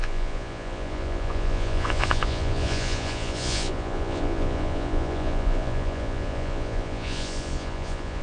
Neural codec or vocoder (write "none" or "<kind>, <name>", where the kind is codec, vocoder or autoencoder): vocoder, Vocos